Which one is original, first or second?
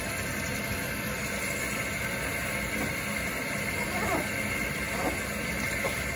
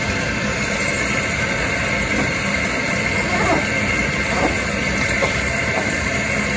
first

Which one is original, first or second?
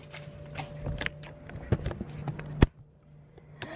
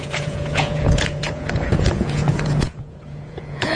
first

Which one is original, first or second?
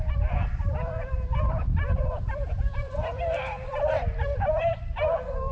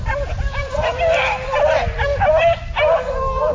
second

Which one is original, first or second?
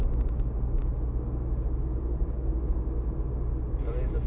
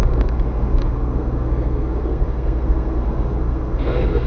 first